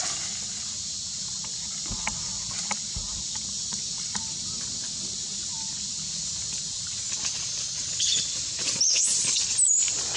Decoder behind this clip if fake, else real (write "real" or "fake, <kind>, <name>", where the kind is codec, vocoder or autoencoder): real